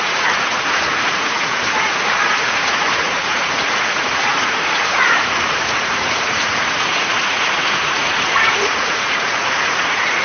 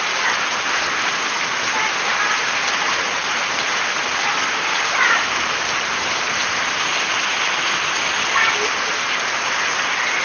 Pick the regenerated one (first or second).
first